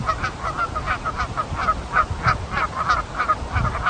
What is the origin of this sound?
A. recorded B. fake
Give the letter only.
A